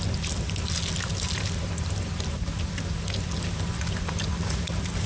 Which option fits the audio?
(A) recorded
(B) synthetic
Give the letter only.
A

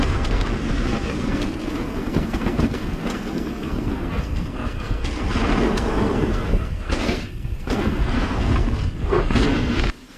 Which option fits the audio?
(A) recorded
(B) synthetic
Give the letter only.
B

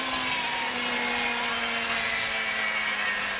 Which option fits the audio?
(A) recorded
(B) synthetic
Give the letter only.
A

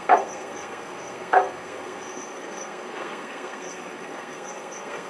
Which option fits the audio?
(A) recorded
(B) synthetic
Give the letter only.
B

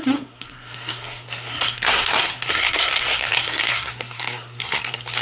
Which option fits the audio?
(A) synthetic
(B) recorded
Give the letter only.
A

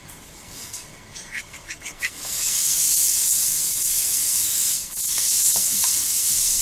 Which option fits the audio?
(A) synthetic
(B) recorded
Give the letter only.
A